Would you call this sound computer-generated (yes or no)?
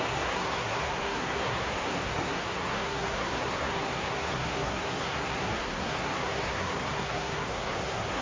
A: yes